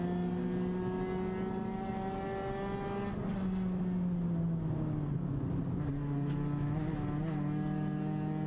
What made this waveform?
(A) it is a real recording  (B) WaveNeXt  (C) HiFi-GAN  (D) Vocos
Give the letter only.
A